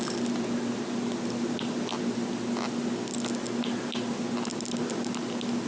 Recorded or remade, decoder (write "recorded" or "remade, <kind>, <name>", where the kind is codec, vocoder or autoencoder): recorded